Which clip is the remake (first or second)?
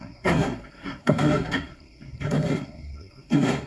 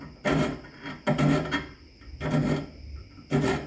first